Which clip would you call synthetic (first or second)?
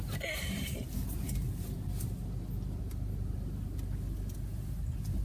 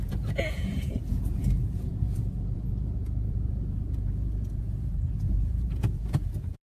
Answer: second